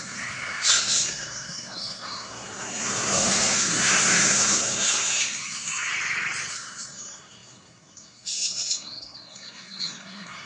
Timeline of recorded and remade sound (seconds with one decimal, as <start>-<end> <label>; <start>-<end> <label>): 0.0-5.9 remade; 5.9-6.5 recorded; 6.5-10.5 remade